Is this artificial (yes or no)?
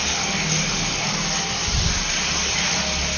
no